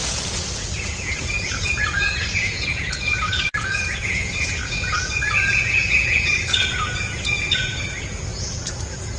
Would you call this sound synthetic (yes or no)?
yes